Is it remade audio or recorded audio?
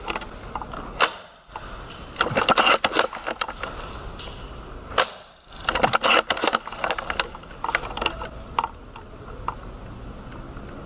recorded